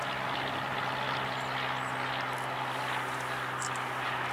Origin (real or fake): real